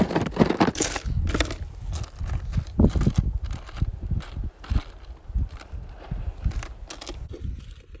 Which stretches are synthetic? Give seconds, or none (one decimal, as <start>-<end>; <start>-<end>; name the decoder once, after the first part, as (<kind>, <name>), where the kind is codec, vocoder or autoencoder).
none

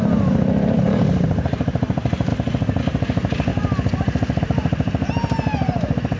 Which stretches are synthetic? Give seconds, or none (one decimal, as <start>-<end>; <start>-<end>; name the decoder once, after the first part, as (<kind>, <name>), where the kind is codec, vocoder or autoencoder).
0.0-2.3 (vocoder, BigVGAN v2); 2.8-3.5; 4.4-6.2